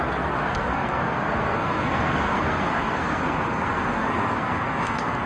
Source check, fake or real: fake